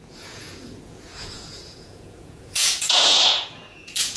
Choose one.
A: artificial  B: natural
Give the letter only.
A